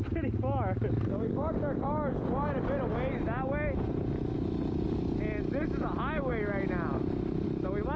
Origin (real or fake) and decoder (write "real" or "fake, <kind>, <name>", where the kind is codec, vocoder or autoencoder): real